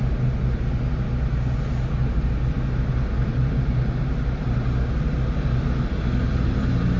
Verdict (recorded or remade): recorded